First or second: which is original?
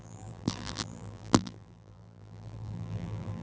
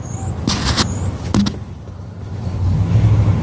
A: second